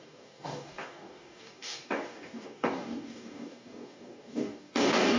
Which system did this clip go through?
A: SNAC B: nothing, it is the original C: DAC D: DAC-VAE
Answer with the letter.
C